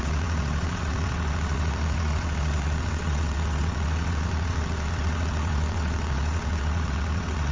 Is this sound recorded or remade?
remade